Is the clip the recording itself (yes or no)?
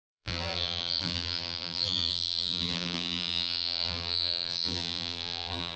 no